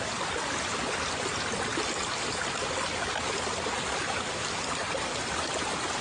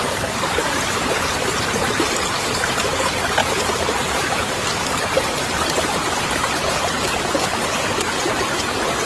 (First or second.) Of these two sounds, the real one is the first